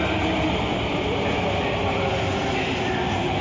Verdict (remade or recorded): recorded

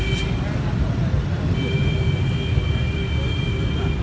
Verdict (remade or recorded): recorded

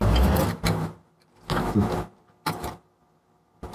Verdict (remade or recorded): recorded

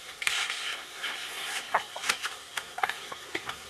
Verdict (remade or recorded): remade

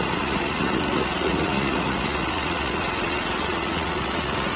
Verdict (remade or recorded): remade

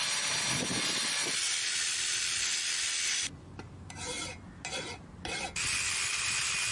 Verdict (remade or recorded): recorded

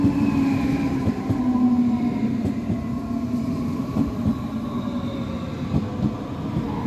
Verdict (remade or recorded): recorded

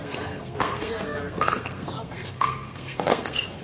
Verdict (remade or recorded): remade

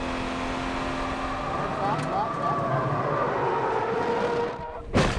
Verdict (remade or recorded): recorded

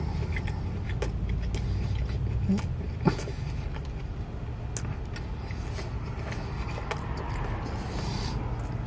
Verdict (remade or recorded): recorded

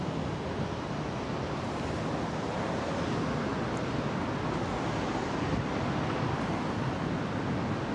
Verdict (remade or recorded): recorded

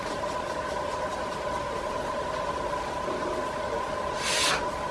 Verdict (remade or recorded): recorded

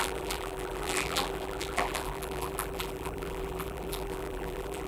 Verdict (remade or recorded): remade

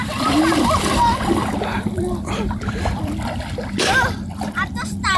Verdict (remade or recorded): remade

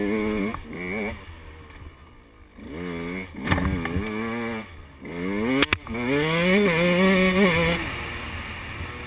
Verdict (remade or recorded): recorded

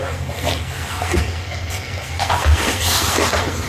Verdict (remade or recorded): remade